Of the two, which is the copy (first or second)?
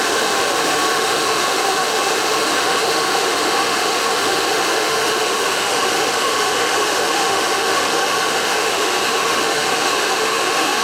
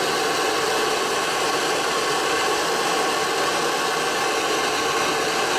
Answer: first